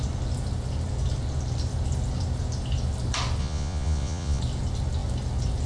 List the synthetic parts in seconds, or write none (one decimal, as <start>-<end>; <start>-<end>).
3.4-4.4